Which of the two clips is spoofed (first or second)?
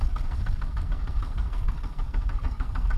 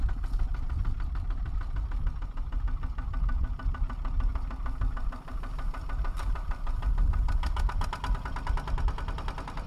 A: first